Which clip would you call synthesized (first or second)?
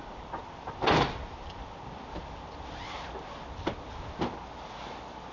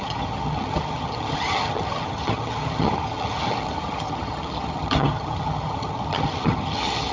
second